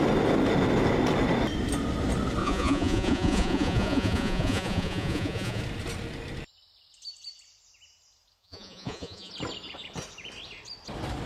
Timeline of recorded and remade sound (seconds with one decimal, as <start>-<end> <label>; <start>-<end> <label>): 0.0-2.4 recorded; 2.4-5.6 remade; 5.6-8.4 recorded; 8.4-9.3 remade; 9.3-11.3 recorded